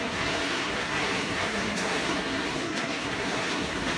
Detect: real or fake fake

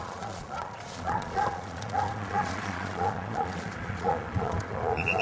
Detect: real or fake fake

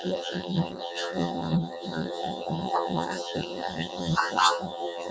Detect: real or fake fake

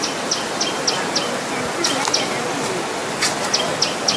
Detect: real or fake real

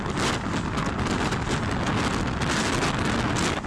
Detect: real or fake real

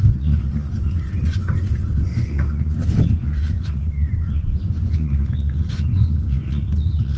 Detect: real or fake fake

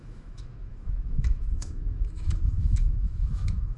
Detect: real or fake fake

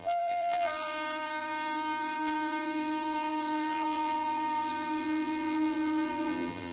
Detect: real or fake fake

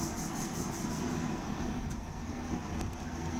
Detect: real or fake fake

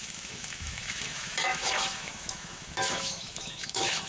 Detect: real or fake fake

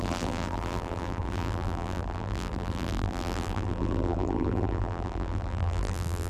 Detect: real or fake fake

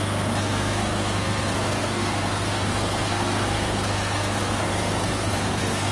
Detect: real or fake fake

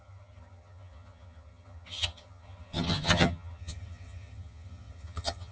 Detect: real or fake fake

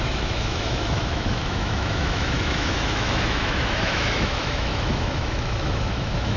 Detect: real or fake fake